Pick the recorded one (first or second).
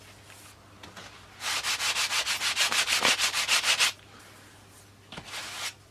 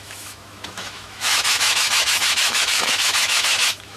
first